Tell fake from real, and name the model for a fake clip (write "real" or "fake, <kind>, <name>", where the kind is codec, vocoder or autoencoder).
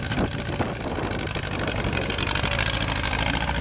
real